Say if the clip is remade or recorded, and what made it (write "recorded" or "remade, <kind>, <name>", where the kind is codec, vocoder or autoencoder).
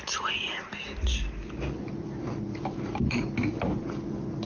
recorded